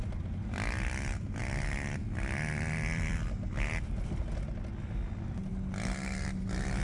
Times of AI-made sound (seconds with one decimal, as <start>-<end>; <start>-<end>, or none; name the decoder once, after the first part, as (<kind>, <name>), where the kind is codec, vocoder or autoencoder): none